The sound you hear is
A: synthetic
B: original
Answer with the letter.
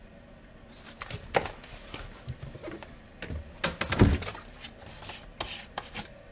B